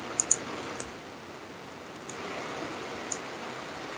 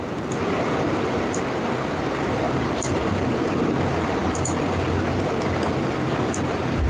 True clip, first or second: first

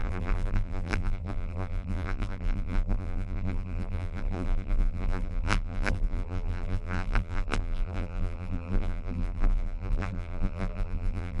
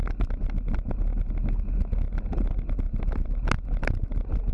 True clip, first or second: second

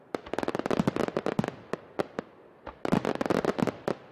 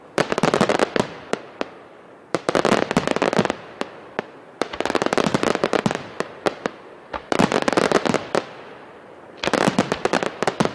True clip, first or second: first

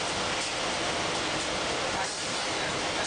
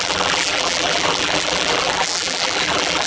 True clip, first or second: first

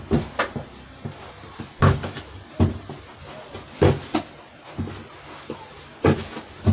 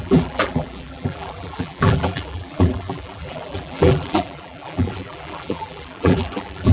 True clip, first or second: first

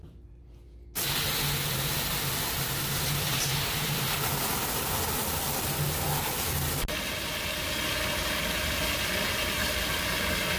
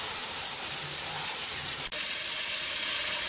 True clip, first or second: first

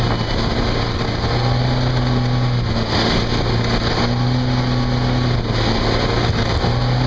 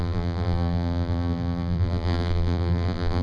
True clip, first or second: first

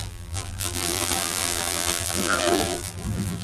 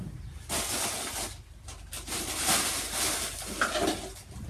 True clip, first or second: second